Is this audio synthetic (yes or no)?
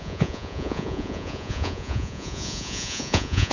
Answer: yes